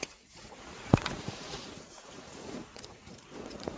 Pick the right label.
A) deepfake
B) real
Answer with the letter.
A